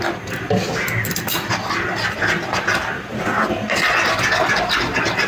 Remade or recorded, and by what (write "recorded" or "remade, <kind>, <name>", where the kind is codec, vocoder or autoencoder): recorded